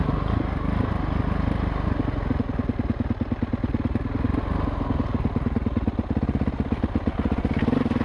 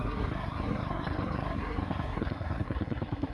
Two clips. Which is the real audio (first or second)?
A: first